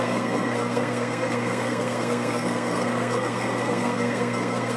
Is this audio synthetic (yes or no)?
yes